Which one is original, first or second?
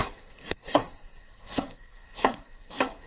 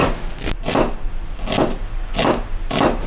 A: second